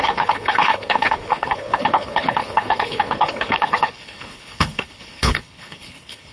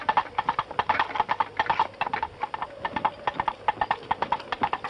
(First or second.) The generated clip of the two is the first